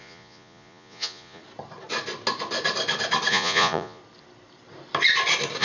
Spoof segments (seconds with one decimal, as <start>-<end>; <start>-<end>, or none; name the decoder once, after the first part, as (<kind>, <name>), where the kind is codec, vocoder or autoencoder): 0.0-1.4 (vocoder, Vocos); 3.3-4.0